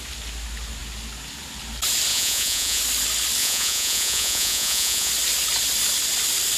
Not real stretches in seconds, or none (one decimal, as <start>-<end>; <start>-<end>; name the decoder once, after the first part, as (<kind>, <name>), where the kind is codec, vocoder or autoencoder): 2.1-2.8 (vocoder, Vocos); 3.4-5.1